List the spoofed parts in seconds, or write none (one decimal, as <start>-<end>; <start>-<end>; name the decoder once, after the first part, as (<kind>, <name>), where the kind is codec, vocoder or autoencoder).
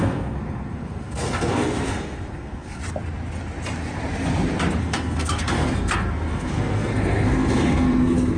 0.0-2.8 (codec, SNAC); 4.8-8.4